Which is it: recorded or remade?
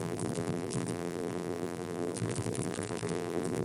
remade